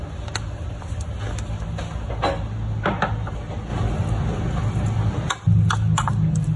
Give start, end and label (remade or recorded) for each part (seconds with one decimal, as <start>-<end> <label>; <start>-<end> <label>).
0.0-6.6 recorded